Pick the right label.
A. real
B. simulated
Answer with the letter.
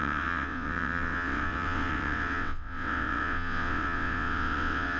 B